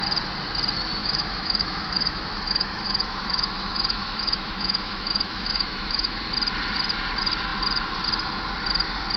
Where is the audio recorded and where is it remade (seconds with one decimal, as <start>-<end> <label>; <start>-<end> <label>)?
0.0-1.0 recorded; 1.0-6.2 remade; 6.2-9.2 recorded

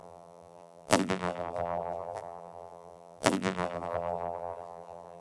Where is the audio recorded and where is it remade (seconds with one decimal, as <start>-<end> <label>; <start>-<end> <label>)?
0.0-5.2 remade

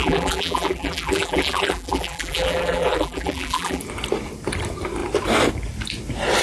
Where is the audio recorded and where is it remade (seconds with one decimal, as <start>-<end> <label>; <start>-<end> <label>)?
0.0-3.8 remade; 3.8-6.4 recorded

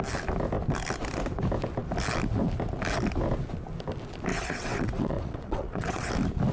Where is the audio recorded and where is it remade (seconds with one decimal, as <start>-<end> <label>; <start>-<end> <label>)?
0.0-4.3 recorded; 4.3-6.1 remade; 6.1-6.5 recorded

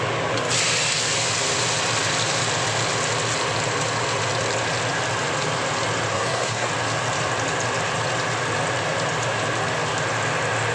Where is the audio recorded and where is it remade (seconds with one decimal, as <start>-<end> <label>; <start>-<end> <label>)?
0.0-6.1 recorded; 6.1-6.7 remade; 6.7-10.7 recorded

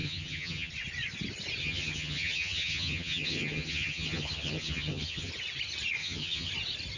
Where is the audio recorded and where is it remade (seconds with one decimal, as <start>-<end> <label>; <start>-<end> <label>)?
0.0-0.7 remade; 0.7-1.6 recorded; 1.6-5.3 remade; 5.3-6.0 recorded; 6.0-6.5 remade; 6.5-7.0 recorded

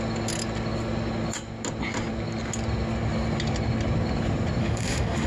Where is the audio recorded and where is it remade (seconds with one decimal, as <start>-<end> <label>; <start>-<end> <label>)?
0.0-4.6 recorded; 4.6-5.3 remade